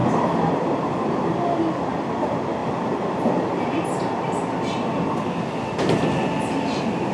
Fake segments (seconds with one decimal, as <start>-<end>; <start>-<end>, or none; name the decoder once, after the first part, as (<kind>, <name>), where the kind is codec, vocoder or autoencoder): none